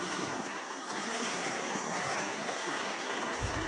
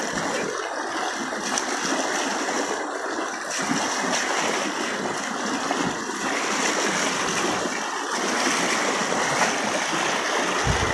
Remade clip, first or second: first